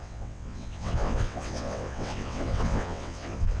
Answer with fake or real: fake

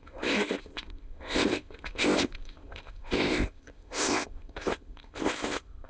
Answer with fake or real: fake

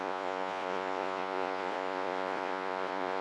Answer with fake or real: fake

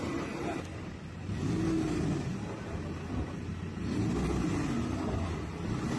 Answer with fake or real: real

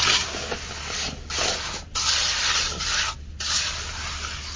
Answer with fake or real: real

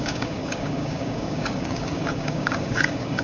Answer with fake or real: fake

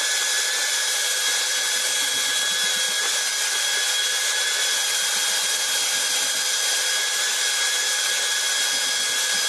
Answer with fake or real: real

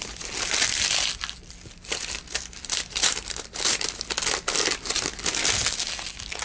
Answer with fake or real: real